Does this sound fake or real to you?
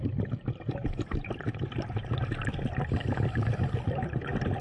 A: real